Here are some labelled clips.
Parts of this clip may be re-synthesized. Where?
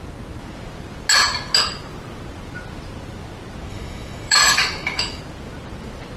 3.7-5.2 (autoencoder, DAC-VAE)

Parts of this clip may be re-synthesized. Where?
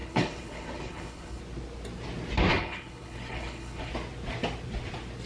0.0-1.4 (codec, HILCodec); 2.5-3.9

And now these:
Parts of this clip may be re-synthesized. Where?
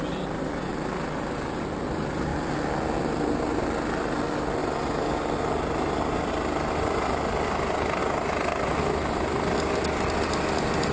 none